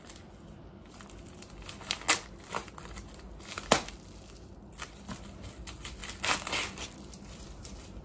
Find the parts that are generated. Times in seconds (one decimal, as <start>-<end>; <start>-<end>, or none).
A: none